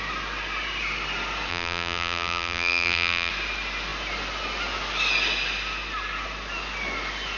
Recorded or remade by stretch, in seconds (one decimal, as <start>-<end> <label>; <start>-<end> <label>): 0.0-1.5 recorded; 1.5-3.3 remade; 3.3-7.4 recorded